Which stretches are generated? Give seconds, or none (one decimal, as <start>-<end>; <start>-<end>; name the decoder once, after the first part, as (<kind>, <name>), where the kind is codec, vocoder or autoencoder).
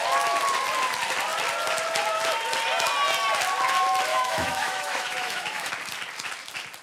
4.1-5.7 (autoencoder, DAC-VAE)